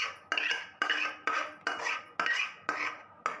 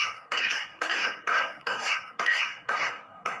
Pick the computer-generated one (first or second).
second